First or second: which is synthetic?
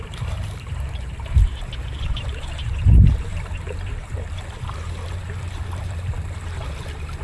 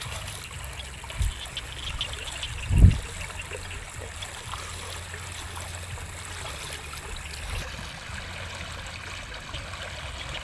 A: first